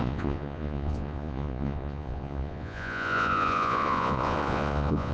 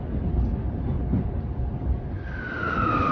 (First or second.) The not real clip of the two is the first